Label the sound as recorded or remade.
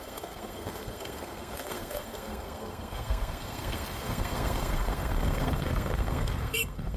remade